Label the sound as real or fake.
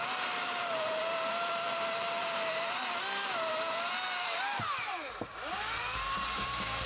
fake